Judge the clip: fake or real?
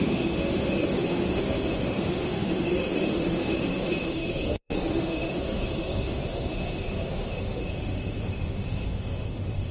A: fake